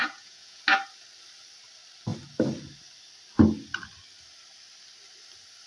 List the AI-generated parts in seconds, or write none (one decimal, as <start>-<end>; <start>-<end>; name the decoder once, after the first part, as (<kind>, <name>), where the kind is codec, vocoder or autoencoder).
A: 0.0-0.6 (vocoder, Vocos)